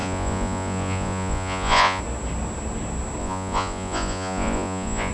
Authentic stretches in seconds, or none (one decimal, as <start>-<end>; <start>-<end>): 2.0-3.2